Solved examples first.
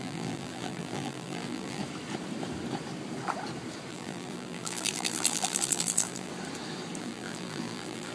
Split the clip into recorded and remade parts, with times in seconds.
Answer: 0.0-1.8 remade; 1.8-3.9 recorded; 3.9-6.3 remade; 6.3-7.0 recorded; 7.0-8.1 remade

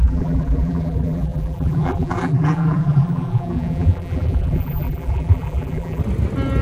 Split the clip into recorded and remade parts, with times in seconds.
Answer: 0.0-6.0 remade; 6.0-6.6 recorded